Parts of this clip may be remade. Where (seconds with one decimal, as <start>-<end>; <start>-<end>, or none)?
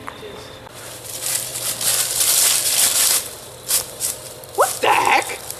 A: 0.0-5.6